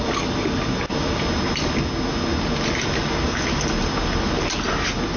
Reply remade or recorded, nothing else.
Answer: recorded